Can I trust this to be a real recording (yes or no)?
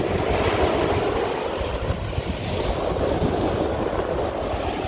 yes